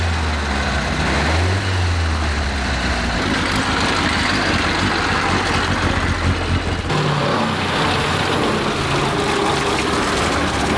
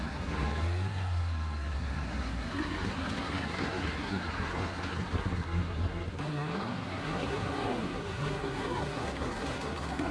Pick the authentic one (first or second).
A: first